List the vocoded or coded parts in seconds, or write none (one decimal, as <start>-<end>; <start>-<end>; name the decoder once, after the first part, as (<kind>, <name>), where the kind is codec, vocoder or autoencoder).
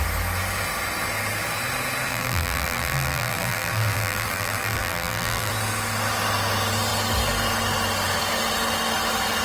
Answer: 2.1-5.5 (vocoder, BigVGAN v2)